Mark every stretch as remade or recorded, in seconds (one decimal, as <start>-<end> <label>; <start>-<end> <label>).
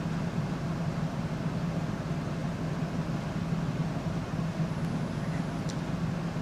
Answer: 0.0-6.4 recorded